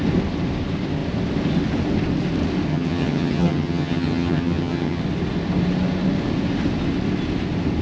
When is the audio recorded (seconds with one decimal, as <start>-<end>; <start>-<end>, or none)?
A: 0.0-2.7; 5.0-7.8